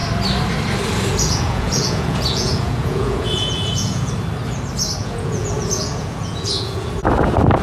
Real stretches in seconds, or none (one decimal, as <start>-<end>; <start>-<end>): 0.0-1.1; 4.1-5.0; 6.9-7.6

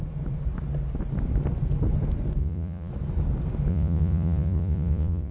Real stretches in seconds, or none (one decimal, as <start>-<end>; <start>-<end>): 0.0-2.4; 2.9-3.7

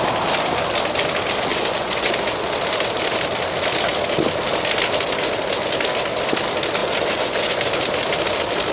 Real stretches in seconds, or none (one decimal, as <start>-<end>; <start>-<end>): 0.0-1.5; 2.1-6.8; 7.6-8.7

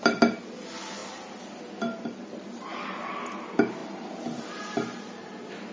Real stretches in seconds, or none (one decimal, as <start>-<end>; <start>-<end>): 0.0-5.7